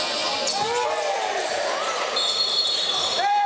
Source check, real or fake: fake